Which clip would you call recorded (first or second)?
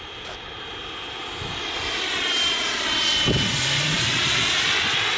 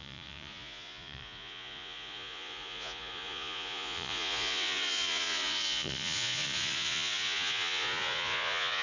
first